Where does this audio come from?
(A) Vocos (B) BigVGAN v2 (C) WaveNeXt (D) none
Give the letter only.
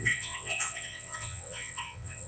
C